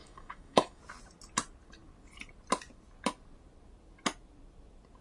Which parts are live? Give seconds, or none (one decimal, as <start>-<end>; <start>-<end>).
0.8-5.0